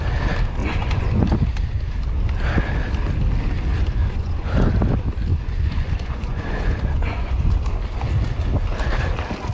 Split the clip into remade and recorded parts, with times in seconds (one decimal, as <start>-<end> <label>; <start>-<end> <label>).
0.0-0.6 recorded; 0.6-1.3 remade; 1.3-4.0 recorded; 4.0-4.7 remade; 4.7-5.3 recorded; 5.3-7.5 remade; 7.5-9.5 recorded